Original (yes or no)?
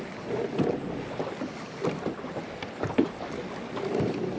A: yes